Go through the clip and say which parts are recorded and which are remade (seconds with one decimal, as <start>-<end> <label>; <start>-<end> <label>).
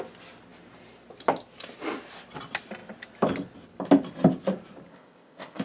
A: 0.0-4.9 recorded; 4.9-5.6 remade